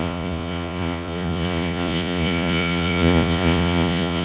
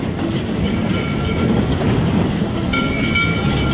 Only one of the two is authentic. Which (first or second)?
second